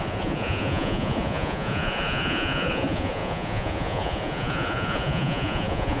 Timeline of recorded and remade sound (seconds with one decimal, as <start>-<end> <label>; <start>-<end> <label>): 0.0-6.0 remade